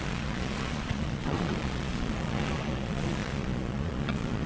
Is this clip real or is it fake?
fake